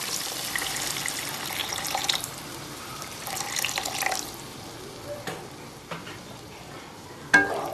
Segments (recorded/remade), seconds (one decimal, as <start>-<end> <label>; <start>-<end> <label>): 0.0-1.6 recorded; 1.6-3.2 remade; 3.2-7.7 recorded